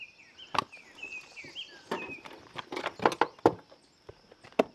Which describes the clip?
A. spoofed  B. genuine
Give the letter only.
B